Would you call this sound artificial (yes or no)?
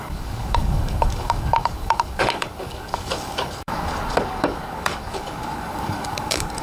yes